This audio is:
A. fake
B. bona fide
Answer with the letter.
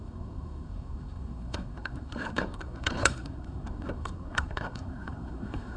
A